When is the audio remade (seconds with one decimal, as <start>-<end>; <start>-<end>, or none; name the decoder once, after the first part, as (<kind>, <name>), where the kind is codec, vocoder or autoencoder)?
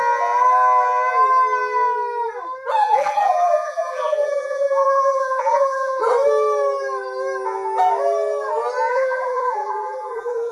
2.8-6.0 (vocoder, BigVGAN v2); 8.9-10.5